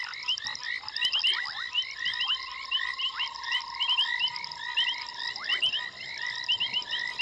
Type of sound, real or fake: real